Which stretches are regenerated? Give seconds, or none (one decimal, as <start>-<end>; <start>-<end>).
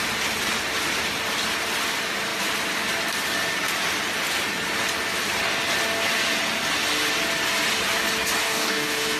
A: 8.4-9.2